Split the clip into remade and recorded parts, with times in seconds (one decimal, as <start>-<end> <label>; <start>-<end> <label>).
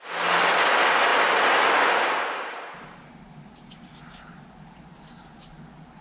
0.0-6.0 recorded